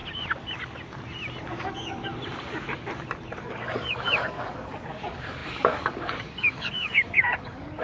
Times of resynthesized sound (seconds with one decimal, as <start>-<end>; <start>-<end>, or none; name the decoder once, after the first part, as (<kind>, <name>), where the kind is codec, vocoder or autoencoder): 1.5-2.1 (codec, DAC); 3.4-7.8